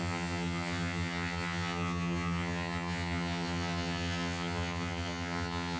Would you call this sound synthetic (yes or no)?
yes